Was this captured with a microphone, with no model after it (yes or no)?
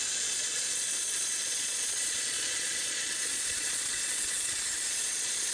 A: no